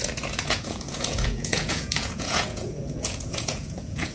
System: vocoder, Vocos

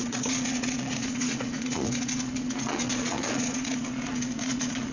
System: vocoder, Vocos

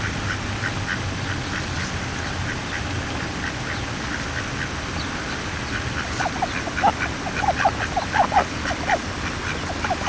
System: none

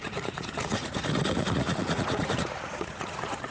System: vocoder, Vocos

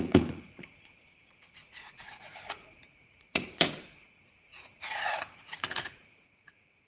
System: vocoder, Vocos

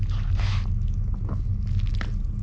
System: none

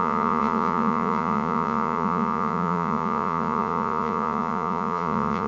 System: vocoder, Vocos